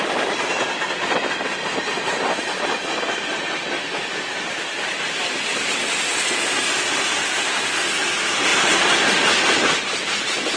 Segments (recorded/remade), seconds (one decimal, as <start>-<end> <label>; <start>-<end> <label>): 0.0-8.5 recorded; 8.5-9.1 remade; 9.1-10.6 recorded